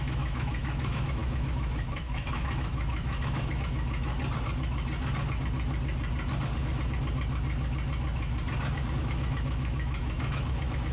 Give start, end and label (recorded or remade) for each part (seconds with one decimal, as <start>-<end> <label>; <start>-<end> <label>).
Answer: 0.0-4.1 remade; 4.1-9.0 recorded; 9.0-10.9 remade